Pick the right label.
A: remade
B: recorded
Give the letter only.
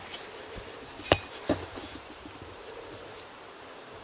A